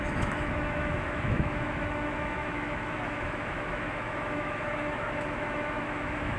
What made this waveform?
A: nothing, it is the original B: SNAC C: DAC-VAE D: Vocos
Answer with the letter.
C